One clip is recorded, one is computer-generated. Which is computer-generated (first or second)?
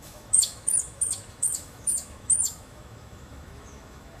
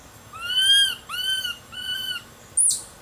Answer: first